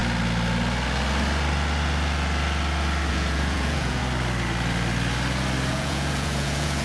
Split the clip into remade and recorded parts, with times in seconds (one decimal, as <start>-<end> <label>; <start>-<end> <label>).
0.0-3.1 recorded; 3.1-4.0 remade; 4.0-5.7 recorded; 5.7-6.8 remade